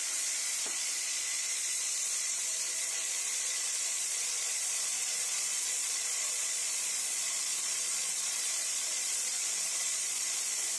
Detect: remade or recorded remade